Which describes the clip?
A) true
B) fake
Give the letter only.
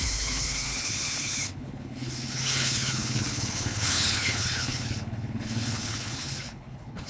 B